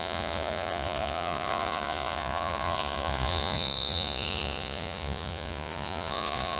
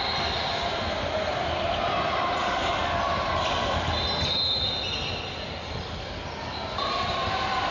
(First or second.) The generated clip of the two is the first